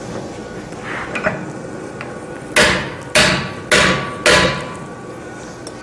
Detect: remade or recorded recorded